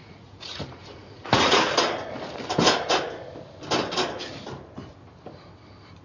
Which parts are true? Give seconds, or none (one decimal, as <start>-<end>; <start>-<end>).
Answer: 1.6-6.0